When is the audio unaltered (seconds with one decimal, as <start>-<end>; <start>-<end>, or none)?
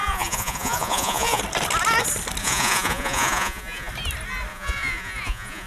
1.4-2.4; 3.9-4.5